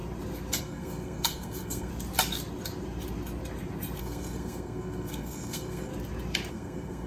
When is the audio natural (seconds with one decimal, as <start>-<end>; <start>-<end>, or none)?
0.0-0.6; 1.9-4.0; 5.9-6.5